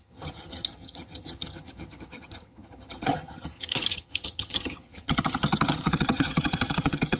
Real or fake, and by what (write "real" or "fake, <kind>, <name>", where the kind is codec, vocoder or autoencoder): fake, vocoder, HiFi-GAN